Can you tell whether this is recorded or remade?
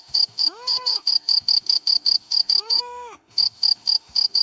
remade